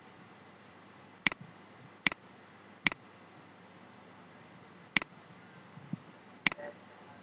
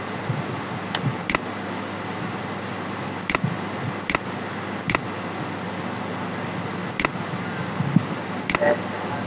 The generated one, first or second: first